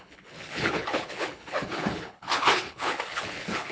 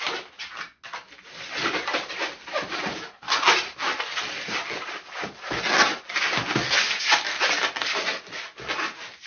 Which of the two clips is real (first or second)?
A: second